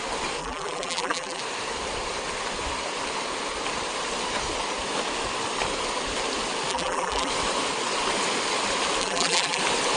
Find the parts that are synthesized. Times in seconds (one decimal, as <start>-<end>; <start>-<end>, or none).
0.4-1.4; 6.7-7.3; 9.0-9.6